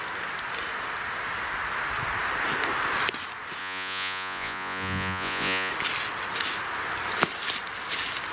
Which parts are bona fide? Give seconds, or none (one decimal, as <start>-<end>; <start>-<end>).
0.0-3.6; 5.7-8.3